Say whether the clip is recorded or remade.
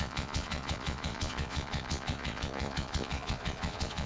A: remade